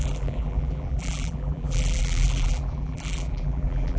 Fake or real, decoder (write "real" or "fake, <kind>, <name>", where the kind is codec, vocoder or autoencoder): fake, vocoder, BigVGAN v2